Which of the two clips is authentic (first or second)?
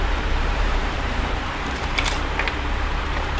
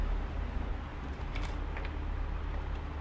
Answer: second